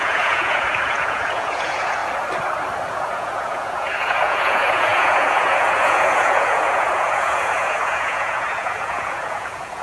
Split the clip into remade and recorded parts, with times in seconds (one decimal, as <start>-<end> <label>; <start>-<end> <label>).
0.0-2.0 remade; 2.0-2.9 recorded; 2.9-9.8 remade